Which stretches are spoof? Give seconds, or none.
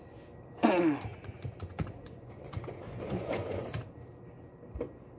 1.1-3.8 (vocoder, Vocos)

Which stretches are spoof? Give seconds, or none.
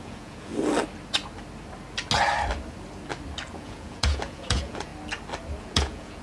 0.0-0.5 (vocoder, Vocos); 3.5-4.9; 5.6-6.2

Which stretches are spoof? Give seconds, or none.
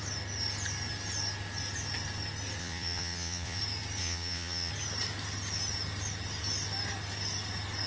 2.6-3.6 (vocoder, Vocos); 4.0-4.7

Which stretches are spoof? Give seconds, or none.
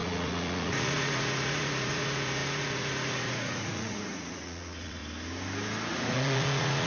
0.0-5.0 (vocoder, Vocos); 5.9-6.9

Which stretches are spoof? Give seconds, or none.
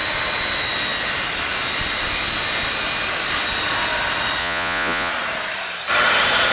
4.4-5.1 (vocoder, Vocos)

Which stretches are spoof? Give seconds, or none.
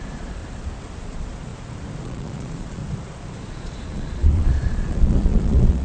0.0-0.4 (vocoder, Vocos); 1.0-1.5; 2.0-2.8; 3.5-5.8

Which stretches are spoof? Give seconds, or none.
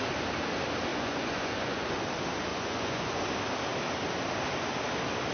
0.9-1.9 (vocoder, Vocos); 2.5-3.2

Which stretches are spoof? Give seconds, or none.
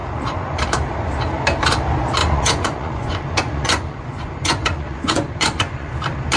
0.0-0.6 (vocoder, Vocos); 2.2-5.9